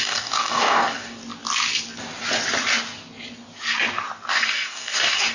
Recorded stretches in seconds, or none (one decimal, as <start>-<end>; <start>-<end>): 1.2-4.3